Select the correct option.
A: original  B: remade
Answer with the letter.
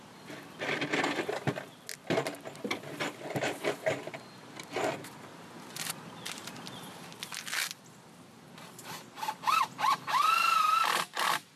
A